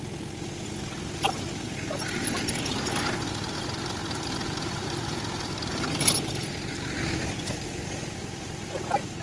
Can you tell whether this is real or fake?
real